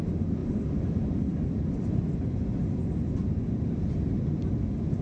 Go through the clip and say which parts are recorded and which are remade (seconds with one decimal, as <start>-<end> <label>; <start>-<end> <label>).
0.0-1.3 recorded; 1.3-1.8 remade; 1.8-2.8 recorded; 2.8-5.0 remade

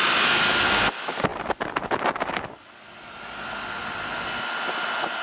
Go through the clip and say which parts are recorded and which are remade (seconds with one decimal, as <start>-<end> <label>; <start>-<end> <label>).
0.0-5.2 recorded

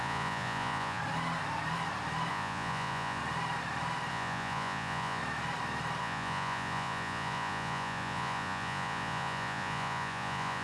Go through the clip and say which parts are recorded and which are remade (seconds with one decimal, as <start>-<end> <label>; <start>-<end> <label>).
0.0-1.0 remade; 1.0-2.3 recorded; 2.3-3.2 remade; 3.2-4.1 recorded; 4.1-5.2 remade; 5.2-6.0 recorded; 6.0-10.6 remade

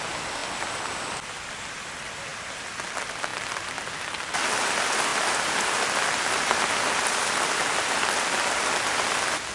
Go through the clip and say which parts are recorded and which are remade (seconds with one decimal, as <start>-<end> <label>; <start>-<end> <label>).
0.0-2.3 recorded; 2.3-2.8 remade; 2.8-5.1 recorded; 5.1-5.6 remade; 5.6-9.5 recorded